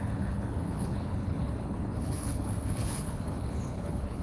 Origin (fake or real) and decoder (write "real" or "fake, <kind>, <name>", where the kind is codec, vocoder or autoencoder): fake, codec, HILCodec